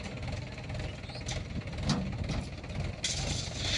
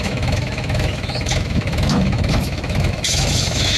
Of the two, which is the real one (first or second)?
first